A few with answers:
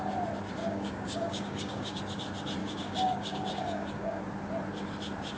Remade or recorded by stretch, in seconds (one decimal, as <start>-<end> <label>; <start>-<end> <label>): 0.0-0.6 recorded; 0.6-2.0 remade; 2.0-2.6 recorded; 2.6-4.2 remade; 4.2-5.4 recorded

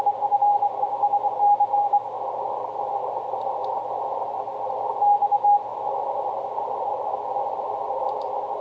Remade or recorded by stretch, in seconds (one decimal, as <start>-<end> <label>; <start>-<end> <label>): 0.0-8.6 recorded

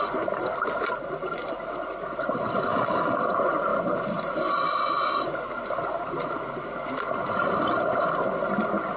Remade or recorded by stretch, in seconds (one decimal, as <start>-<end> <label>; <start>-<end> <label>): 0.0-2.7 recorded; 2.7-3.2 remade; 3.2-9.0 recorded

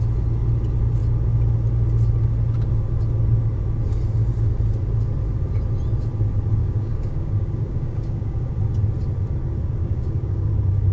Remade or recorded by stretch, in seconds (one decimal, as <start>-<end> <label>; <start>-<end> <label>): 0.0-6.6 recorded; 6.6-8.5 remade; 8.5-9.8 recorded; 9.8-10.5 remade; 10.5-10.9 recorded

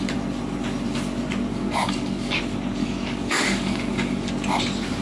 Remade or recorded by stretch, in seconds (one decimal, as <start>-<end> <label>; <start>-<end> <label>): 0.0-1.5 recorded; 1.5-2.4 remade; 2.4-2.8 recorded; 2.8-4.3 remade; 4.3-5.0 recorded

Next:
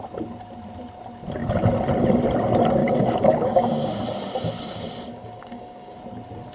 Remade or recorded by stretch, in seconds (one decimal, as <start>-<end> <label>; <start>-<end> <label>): 0.0-2.8 recorded; 2.8-4.0 remade; 4.0-5.1 recorded; 5.1-6.0 remade; 6.0-6.5 recorded

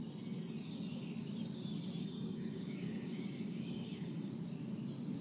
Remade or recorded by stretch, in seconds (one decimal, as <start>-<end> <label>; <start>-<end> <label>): 0.0-2.0 recorded; 2.0-4.3 remade; 4.3-5.2 recorded